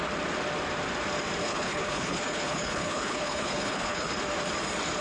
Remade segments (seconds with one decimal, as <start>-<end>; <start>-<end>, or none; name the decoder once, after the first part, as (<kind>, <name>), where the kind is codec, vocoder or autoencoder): 1.4-4.1 (codec, HILCodec)